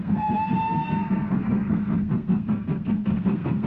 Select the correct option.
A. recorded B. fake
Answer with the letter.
B